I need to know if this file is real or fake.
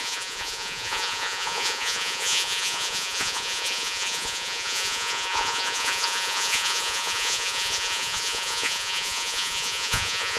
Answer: fake